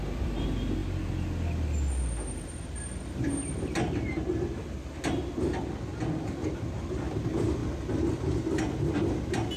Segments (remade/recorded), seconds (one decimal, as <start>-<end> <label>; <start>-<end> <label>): 0.0-9.6 recorded